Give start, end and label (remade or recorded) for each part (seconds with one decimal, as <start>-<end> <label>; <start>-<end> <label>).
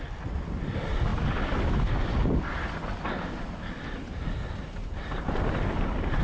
0.0-4.8 recorded; 4.8-5.4 remade; 5.4-6.2 recorded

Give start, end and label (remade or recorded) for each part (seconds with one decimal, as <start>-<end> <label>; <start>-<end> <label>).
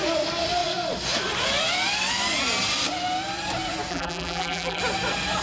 0.0-3.9 recorded; 3.9-4.8 remade; 4.8-5.4 recorded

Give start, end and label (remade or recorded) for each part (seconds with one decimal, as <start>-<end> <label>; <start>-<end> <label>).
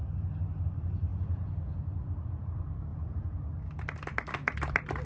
0.0-1.1 recorded; 1.1-1.8 remade; 1.8-2.9 recorded; 2.9-3.5 remade; 3.5-5.1 recorded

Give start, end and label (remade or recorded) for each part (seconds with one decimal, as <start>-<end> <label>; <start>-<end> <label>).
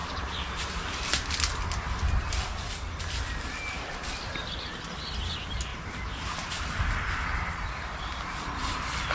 0.0-9.1 recorded